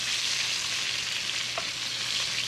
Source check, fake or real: real